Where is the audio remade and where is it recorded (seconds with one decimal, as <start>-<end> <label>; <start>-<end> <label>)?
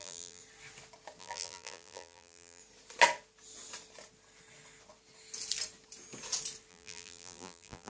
0.0-0.4 remade; 0.4-1.2 recorded; 1.2-2.6 remade; 2.6-6.7 recorded; 6.7-7.9 remade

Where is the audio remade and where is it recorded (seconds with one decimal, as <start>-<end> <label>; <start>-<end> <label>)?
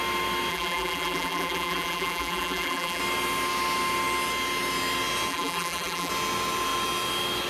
0.0-0.5 recorded; 0.5-3.0 remade; 3.0-5.3 recorded; 5.3-6.1 remade; 6.1-7.5 recorded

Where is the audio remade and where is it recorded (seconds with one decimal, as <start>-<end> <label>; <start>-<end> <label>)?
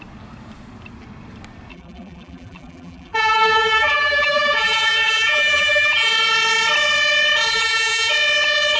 0.0-1.7 recorded; 1.7-6.1 remade; 6.1-7.5 recorded; 7.5-8.1 remade; 8.1-8.8 recorded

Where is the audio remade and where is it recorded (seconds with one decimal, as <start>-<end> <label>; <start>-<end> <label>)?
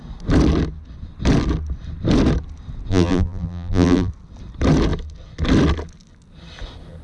0.0-2.9 recorded; 2.9-4.1 remade; 4.1-7.0 recorded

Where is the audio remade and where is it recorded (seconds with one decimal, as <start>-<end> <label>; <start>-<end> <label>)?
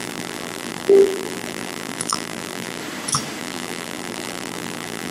0.0-2.8 remade; 2.8-3.4 recorded; 3.4-5.1 remade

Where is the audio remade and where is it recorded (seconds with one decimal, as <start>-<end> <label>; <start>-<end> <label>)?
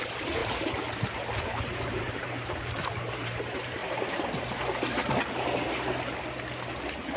0.0-0.4 remade; 0.4-1.6 recorded; 1.6-3.8 remade; 3.8-7.2 recorded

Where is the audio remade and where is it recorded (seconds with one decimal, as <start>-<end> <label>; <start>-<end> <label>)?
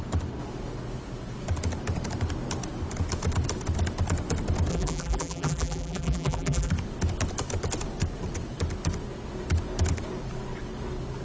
0.0-4.7 recorded; 4.7-6.7 remade; 6.7-11.2 recorded